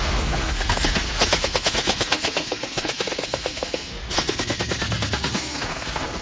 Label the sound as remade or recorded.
remade